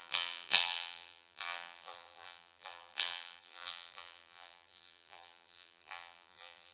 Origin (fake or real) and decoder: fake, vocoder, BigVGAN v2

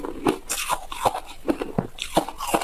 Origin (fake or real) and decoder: real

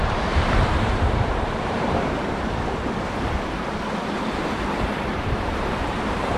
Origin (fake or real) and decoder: fake, vocoder, BigVGAN v2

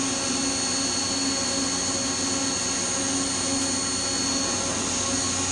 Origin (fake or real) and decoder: real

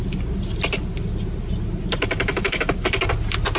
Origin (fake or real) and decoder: real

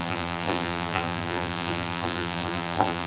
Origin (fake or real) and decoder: fake, vocoder, BigVGAN v2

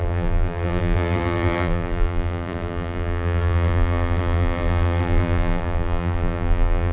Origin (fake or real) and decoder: fake, vocoder, BigVGAN v2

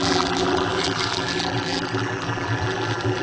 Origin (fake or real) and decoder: fake, vocoder, BigVGAN v2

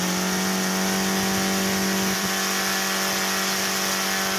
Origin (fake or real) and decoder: real